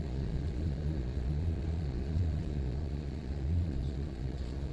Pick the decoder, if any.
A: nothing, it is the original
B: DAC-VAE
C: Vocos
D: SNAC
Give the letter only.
C